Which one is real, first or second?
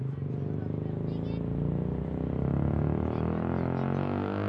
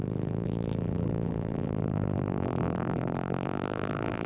first